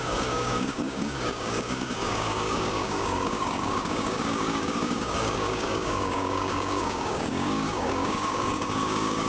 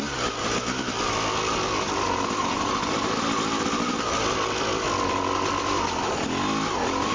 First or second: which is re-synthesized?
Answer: first